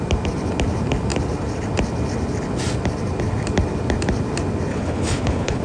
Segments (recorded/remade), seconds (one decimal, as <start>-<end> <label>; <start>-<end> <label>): 0.0-4.7 recorded; 4.7-5.6 remade